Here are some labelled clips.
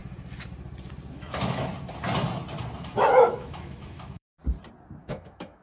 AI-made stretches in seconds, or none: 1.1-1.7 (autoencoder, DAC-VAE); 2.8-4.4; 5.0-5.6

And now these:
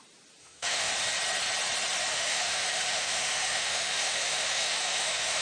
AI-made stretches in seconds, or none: 0.4-0.9 (autoencoder, DAC-VAE); 2.1-5.4